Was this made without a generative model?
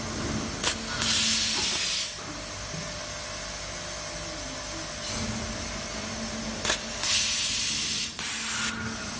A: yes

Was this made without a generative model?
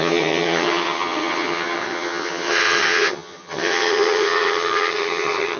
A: no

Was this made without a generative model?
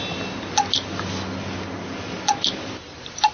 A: yes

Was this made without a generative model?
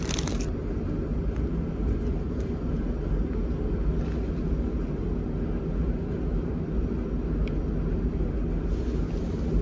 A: yes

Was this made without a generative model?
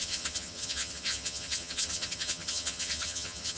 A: no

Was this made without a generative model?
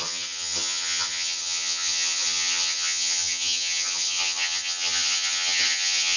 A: no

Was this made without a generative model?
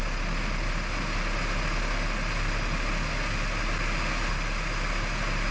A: yes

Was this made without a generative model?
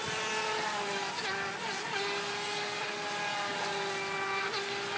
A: yes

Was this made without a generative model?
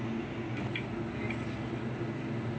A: yes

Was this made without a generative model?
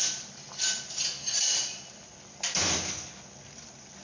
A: yes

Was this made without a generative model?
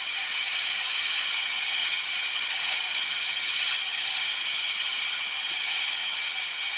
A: no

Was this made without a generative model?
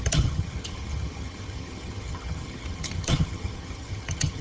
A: no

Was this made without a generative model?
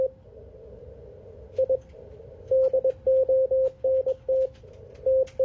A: yes